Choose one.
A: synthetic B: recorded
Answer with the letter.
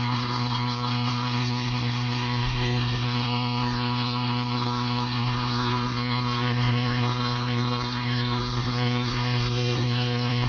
A